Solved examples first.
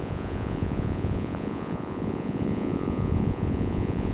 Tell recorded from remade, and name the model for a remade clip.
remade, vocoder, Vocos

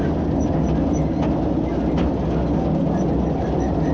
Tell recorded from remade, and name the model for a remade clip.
recorded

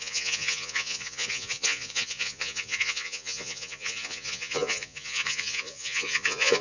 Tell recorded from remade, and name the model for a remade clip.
remade, vocoder, Vocos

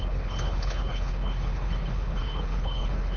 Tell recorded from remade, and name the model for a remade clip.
remade, codec, HILCodec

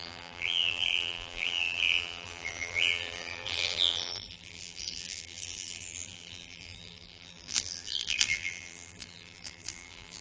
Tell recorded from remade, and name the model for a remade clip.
remade, vocoder, BigVGAN v2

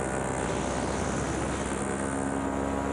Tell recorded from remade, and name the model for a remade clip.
recorded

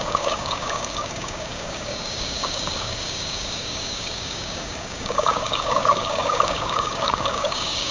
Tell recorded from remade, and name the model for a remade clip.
remade, codec, DAC